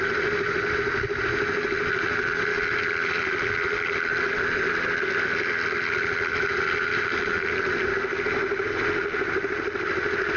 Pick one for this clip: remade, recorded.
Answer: recorded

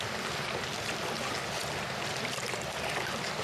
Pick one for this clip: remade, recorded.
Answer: recorded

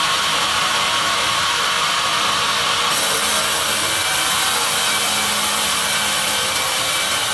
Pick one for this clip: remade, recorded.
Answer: recorded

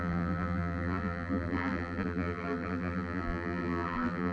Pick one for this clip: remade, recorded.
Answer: remade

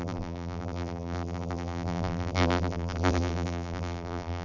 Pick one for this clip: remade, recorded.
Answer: remade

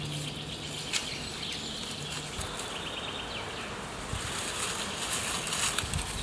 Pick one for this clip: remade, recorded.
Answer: recorded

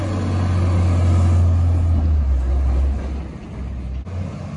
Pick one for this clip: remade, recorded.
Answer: recorded